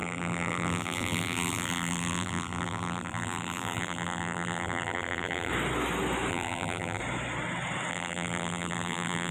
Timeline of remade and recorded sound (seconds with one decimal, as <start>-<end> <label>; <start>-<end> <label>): 0.0-5.5 remade; 5.5-6.3 recorded; 6.3-7.0 remade; 7.0-7.9 recorded; 7.9-9.3 remade